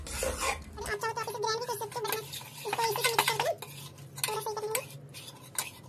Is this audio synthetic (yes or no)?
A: no